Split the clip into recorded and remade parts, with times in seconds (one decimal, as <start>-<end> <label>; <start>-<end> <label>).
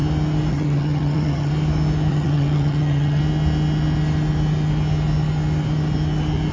0.0-0.5 recorded; 0.5-1.5 remade; 1.5-2.1 recorded; 2.1-3.2 remade; 3.2-6.5 recorded